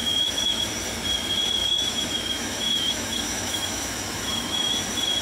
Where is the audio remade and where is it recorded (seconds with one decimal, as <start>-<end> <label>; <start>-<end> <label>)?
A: 0.0-0.7 remade; 0.7-1.6 recorded; 1.6-4.7 remade; 4.7-5.2 recorded

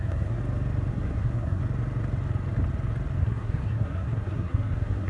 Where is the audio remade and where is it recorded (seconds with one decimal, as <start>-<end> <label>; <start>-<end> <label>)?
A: 0.0-0.4 remade; 0.4-0.9 recorded; 0.9-1.6 remade; 1.6-3.2 recorded; 3.2-5.1 remade

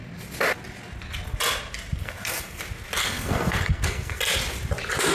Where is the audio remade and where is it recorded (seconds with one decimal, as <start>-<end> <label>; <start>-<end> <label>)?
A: 0.0-2.0 recorded; 2.0-2.6 remade; 2.6-3.0 recorded; 3.0-4.2 remade; 4.2-5.1 recorded

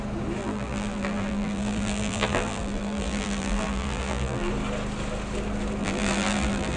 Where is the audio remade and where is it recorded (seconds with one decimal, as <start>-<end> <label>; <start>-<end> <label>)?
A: 0.0-0.4 recorded; 0.4-4.5 remade; 4.5-5.8 recorded; 5.8-6.8 remade

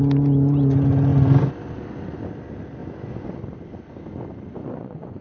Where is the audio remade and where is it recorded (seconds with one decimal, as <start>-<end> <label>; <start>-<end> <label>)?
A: 0.0-2.8 recorded; 2.8-3.4 remade; 3.4-4.6 recorded; 4.6-5.2 remade

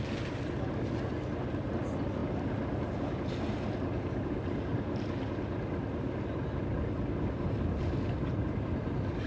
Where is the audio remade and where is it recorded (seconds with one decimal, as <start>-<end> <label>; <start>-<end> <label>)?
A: 0.0-9.3 recorded